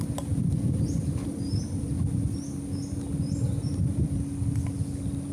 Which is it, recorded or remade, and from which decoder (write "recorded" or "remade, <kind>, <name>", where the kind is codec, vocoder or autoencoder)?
remade, vocoder, BigVGAN v2